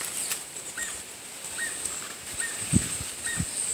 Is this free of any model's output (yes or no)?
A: no